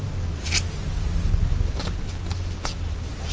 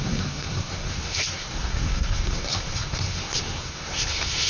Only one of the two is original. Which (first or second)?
first